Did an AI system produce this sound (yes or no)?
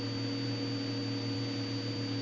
no